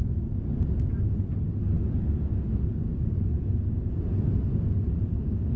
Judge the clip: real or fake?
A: real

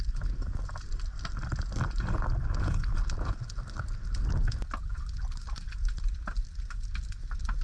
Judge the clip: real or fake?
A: real